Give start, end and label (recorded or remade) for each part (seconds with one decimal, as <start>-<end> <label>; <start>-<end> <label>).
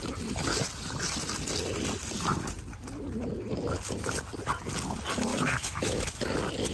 0.0-5.3 recorded; 5.3-6.1 remade; 6.1-6.7 recorded